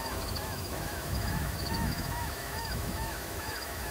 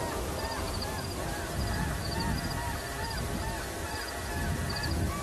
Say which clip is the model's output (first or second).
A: first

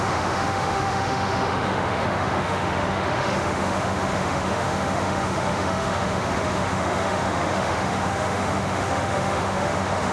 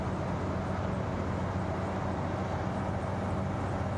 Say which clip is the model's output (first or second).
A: first